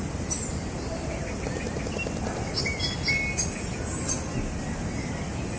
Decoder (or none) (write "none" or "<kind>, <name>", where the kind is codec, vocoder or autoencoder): none